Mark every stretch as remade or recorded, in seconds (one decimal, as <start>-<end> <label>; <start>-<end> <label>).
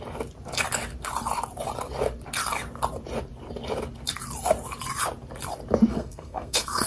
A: 0.0-5.9 recorded; 5.9-6.9 remade